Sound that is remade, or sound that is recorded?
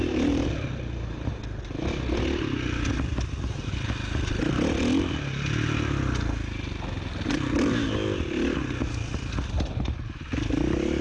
recorded